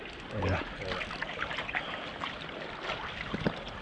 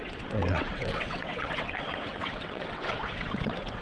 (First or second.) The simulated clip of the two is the second